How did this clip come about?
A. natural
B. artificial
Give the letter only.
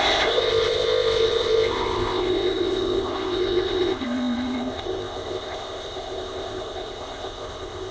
B